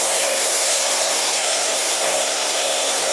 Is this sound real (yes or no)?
no